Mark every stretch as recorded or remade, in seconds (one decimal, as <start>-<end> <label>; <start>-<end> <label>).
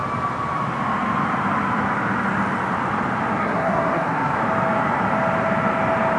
0.0-3.4 recorded; 3.4-4.4 remade; 4.4-6.2 recorded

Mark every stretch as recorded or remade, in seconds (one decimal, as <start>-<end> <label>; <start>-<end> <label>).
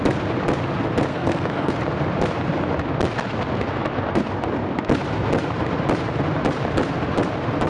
0.0-1.1 recorded; 1.1-1.7 remade; 1.7-7.7 recorded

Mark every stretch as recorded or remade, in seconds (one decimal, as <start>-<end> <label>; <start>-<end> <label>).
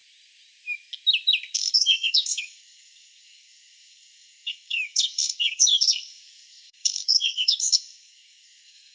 0.0-1.6 recorded; 1.6-8.9 remade